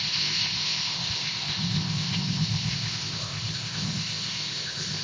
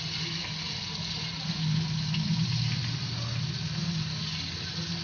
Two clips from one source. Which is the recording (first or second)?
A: second